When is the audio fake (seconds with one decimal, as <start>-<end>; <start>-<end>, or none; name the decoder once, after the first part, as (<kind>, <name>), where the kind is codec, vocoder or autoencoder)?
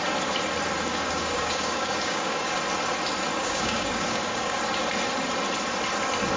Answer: 0.9-2.6 (codec, DAC); 3.3-4.6